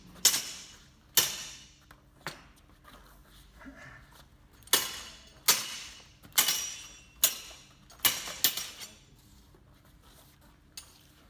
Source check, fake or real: real